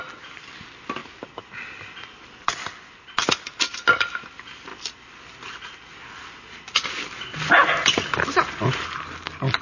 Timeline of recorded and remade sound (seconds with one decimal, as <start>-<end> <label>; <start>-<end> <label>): 0.0-9.6 recorded